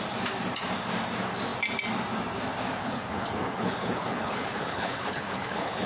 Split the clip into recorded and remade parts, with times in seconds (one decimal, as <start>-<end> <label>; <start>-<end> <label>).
0.0-2.8 recorded; 2.8-5.9 remade